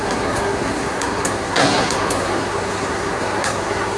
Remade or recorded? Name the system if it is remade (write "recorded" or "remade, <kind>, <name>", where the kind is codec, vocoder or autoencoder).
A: remade, codec, SNAC